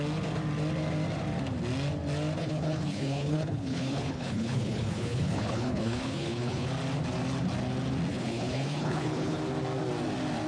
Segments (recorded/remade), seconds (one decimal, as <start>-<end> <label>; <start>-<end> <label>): 0.0-2.4 recorded; 2.4-6.7 remade; 6.7-8.1 recorded; 8.1-9.4 remade; 9.4-10.5 recorded